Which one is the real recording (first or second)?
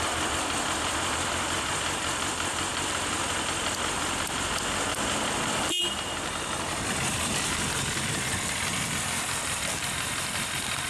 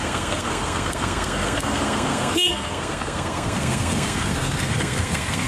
first